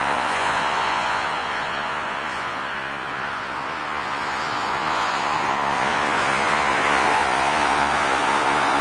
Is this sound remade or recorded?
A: remade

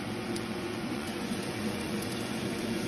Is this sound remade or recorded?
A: remade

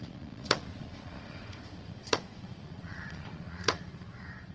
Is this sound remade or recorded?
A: remade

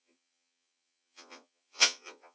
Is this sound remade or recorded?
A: remade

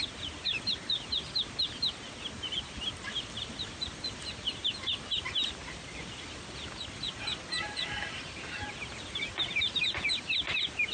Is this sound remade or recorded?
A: recorded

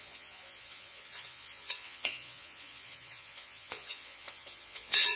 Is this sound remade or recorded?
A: remade